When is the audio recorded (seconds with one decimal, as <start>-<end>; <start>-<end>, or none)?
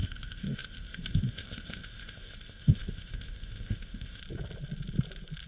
4.2-5.5